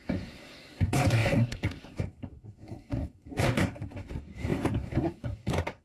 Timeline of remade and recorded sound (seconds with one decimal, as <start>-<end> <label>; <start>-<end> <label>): 0.0-5.8 remade